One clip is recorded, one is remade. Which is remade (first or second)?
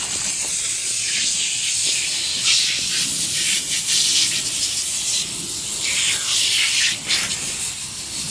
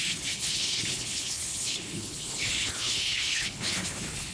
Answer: second